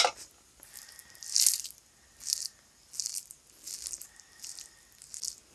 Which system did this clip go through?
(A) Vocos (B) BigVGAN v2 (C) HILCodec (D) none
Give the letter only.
D